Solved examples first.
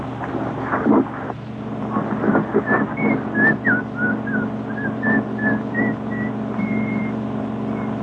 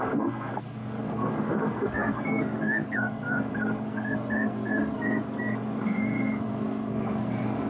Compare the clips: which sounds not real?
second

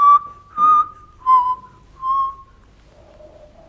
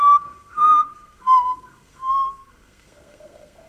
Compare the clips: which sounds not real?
second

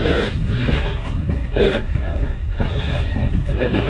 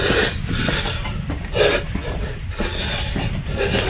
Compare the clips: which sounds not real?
first